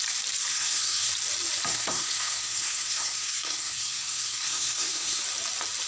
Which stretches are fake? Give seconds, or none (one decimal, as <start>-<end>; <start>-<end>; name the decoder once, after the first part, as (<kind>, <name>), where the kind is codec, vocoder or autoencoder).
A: 0.5-1.1 (codec, SNAC); 1.7-5.2